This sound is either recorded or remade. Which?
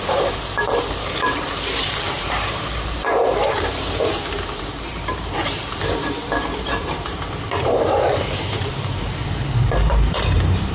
remade